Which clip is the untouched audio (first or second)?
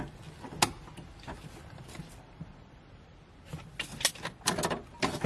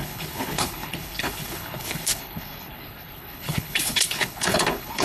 first